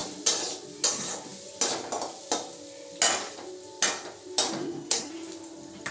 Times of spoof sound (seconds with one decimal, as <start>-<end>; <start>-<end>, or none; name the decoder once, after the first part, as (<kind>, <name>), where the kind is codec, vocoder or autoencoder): 4.6-5.1 (codec, SNAC)